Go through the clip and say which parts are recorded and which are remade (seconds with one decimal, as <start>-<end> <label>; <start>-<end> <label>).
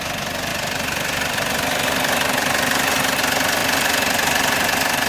0.0-0.5 recorded; 0.5-3.2 remade; 3.2-3.6 recorded; 3.6-5.1 remade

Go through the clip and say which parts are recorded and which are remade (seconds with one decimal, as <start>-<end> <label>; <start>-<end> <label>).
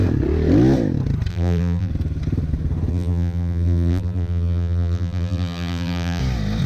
0.0-1.3 recorded; 1.3-1.9 remade; 1.9-2.9 recorded; 2.9-6.2 remade; 6.2-6.7 recorded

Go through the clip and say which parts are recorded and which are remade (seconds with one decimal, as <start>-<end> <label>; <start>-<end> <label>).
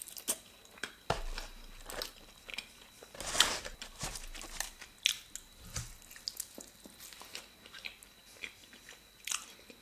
0.0-9.8 recorded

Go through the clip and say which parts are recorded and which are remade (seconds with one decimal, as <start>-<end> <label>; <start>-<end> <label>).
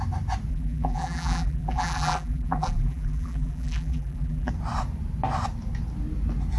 0.0-0.5 recorded; 0.5-4.5 remade; 4.5-6.6 recorded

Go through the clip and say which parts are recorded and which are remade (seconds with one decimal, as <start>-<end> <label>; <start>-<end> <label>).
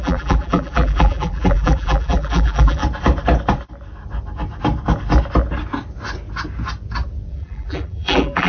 0.0-2.8 remade; 2.8-7.3 recorded; 7.3-8.5 remade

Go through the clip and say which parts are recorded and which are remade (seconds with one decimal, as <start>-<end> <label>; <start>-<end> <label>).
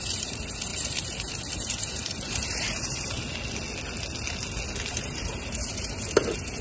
0.0-3.1 remade; 3.1-4.9 recorded; 4.9-6.6 remade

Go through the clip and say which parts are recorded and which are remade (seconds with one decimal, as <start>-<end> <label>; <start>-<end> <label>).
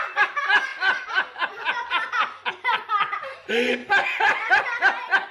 0.0-0.7 recorded; 0.7-1.4 remade; 1.4-3.8 recorded; 3.8-4.5 remade; 4.5-5.3 recorded